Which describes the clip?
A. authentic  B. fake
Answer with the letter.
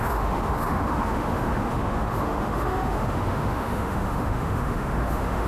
B